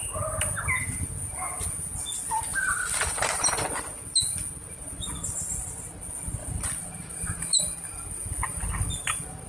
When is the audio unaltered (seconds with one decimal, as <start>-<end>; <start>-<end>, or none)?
0.0-2.5; 3.5-6.4; 7.6-9.5

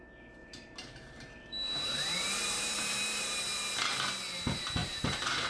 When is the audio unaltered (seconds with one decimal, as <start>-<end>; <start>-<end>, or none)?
0.0-0.4; 3.7-4.8

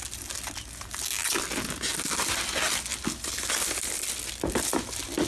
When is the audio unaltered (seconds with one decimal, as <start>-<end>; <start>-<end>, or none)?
0.0-5.3

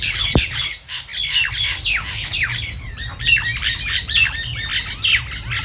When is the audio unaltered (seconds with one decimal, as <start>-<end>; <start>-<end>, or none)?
1.1-2.1; 4.7-5.6

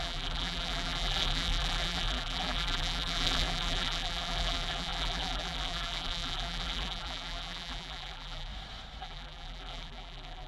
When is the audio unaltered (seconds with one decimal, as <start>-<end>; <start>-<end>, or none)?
8.5-9.0